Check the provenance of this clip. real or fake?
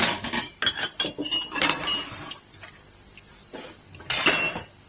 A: real